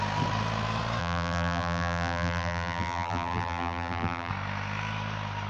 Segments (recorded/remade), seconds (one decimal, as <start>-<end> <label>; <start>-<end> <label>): 0.0-1.0 recorded; 1.0-4.3 remade; 4.3-5.5 recorded